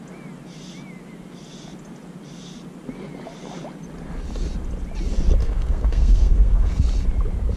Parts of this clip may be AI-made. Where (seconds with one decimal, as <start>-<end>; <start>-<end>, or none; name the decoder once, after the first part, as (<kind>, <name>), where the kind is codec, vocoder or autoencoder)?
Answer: 5.4-6.8 (codec, SNAC)